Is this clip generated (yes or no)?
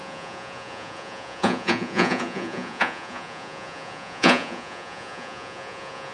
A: yes